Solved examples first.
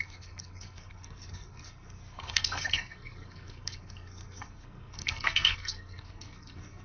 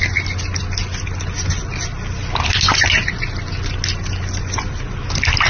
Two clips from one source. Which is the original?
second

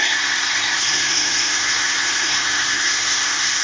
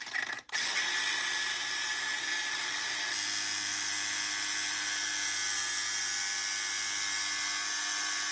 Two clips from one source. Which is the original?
second